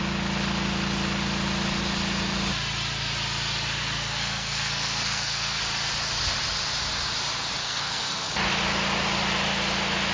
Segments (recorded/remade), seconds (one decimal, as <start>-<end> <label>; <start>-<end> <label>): 0.0-3.8 recorded; 3.8-5.6 remade; 5.6-7.6 recorded; 7.6-8.3 remade; 8.3-10.1 recorded